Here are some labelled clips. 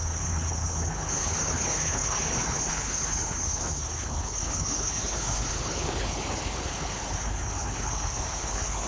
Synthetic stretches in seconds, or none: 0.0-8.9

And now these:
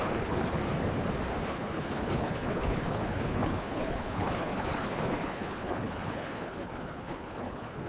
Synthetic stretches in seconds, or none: 0.0-0.6; 1.5-7.9

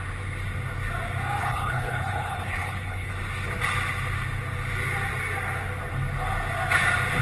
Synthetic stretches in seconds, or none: 1.4-3.1

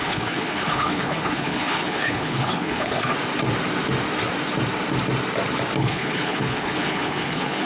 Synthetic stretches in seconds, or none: 0.0-3.1; 5.8-7.7